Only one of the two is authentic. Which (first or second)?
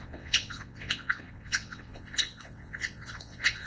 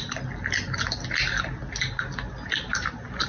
second